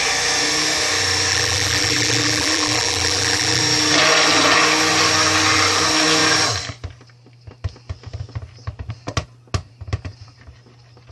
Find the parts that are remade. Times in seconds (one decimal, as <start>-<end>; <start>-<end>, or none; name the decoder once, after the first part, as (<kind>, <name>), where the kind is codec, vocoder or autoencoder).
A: 1.3-3.6 (vocoder, BigVGAN v2)